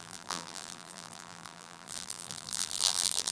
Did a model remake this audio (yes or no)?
yes